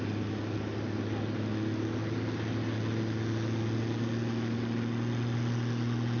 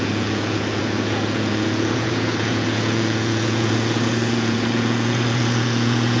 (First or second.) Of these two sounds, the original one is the first